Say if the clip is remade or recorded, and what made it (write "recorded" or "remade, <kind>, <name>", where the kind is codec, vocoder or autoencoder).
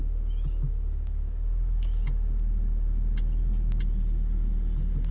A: recorded